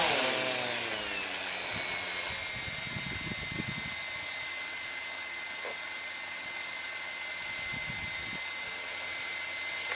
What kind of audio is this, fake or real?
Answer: real